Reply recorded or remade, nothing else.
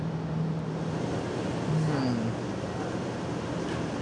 recorded